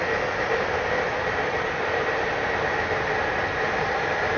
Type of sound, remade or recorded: recorded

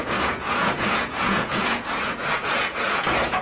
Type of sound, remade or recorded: remade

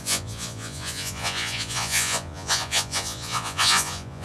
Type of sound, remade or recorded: remade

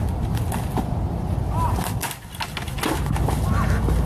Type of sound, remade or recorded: recorded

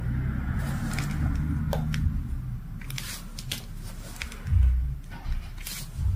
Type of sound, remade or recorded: recorded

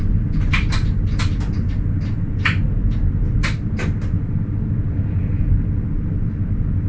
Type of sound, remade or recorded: recorded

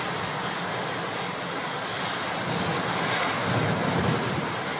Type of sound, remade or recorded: recorded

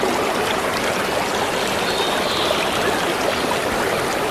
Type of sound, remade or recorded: recorded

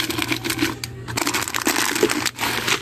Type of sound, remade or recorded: recorded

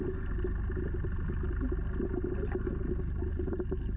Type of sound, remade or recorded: recorded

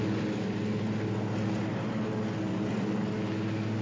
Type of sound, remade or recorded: recorded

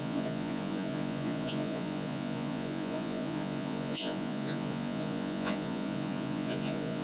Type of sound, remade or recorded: remade